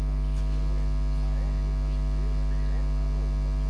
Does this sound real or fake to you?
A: real